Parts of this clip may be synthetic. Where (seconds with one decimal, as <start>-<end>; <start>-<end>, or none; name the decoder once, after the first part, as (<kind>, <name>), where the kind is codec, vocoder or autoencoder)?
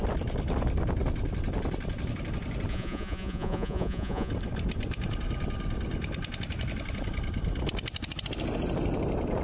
2.7-4.3 (vocoder, Vocos)